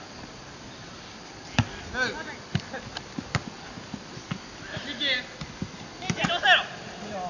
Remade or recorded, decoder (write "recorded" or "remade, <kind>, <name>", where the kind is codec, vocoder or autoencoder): recorded